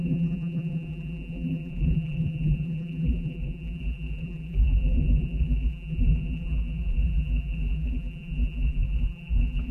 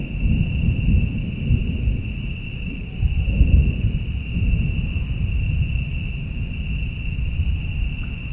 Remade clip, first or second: first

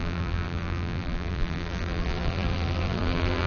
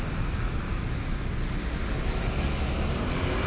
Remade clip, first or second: first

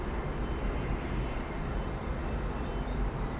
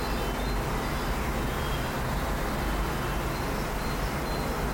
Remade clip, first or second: first